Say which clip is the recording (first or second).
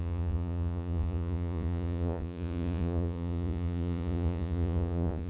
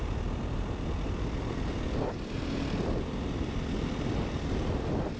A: second